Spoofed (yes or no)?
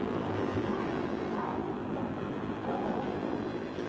yes